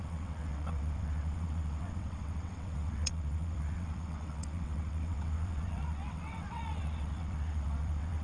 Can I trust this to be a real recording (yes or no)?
no